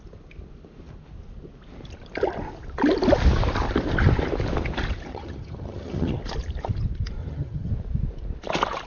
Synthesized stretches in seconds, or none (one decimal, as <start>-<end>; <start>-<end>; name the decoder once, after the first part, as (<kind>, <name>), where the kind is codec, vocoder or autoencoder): 5.1-6.2 (vocoder, HiFi-GAN); 7.2-7.7